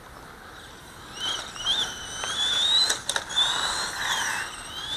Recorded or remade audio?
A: recorded